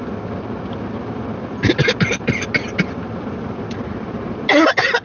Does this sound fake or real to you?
real